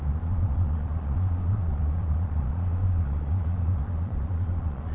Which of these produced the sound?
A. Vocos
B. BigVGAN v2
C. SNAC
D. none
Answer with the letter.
A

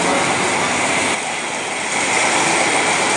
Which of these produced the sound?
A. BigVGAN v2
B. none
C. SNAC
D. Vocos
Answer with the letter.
B